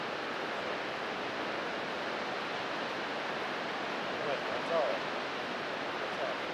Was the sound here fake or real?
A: real